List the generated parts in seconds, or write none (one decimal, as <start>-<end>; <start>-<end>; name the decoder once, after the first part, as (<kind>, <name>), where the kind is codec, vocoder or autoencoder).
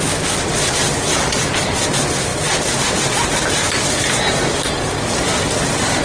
none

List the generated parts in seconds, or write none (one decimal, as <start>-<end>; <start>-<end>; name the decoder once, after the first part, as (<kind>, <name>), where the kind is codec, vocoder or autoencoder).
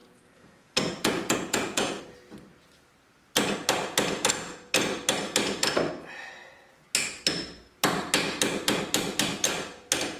0.0-2.0 (vocoder, Vocos)